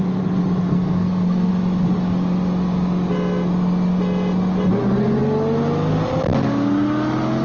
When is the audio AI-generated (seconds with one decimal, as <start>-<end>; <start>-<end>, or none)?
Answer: 0.7-1.5